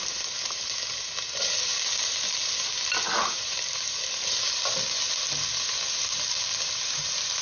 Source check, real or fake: real